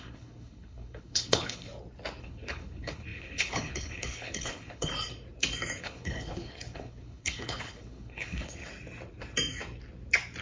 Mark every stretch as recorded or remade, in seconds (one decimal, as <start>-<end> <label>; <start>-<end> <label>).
0.0-1.7 remade; 1.7-2.2 recorded; 2.2-4.9 remade; 4.9-5.8 recorded; 5.8-8.6 remade; 8.6-10.4 recorded